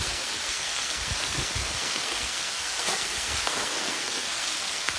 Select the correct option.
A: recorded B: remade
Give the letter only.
B